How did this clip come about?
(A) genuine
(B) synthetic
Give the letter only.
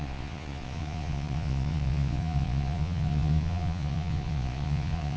B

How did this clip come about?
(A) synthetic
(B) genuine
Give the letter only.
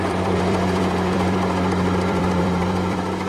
A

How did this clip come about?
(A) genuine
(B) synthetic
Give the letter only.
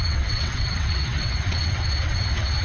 B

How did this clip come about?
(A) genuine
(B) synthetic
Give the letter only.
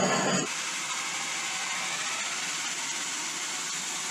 A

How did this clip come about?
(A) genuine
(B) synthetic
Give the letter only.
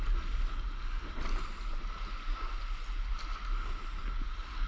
A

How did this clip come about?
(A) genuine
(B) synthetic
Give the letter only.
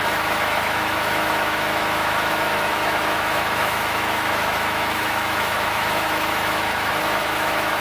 B